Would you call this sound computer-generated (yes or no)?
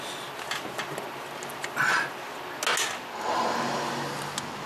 no